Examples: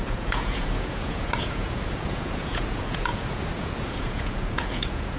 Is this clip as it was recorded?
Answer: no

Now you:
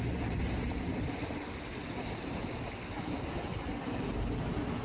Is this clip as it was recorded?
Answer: yes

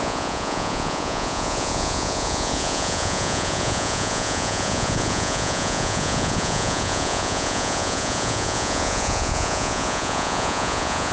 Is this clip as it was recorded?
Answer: no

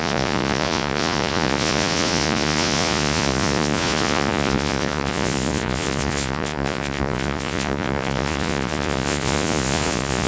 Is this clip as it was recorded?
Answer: no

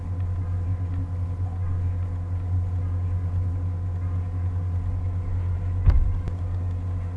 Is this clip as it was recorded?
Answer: yes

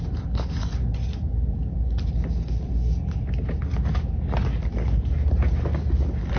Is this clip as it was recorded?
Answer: yes